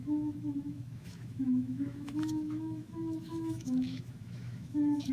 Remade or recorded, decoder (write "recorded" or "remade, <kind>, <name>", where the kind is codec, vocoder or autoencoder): remade, autoencoder, DAC-VAE